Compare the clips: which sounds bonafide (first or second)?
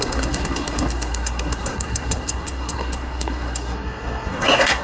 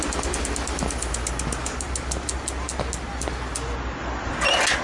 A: second